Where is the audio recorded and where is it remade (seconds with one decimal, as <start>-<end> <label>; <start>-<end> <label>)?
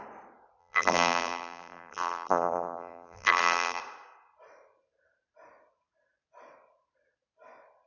0.0-0.6 recorded; 0.6-3.8 remade; 3.8-7.9 recorded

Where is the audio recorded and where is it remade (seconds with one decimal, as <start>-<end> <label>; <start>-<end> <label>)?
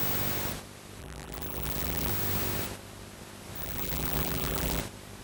0.0-1.0 recorded; 1.0-2.1 remade; 2.1-3.6 recorded; 3.6-4.8 remade; 4.8-5.2 recorded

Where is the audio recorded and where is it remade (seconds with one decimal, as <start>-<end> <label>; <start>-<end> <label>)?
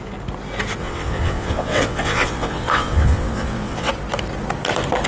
0.0-0.8 recorded; 0.8-3.9 remade; 3.9-5.1 recorded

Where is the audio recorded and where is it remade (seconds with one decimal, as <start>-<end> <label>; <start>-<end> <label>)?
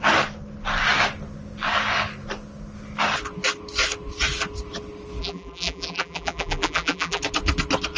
0.0-5.2 recorded; 5.2-7.2 remade; 7.2-8.0 recorded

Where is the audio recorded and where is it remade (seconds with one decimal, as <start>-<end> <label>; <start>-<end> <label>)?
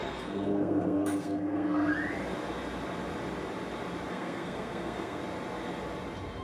0.0-1.9 remade; 1.9-4.1 recorded; 4.1-5.2 remade; 5.2-6.4 recorded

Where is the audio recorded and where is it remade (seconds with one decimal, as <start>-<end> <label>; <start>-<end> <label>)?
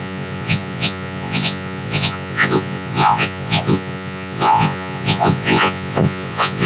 0.0-6.7 remade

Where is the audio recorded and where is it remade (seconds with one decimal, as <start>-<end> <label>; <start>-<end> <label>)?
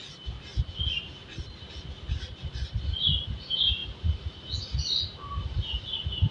0.0-6.3 recorded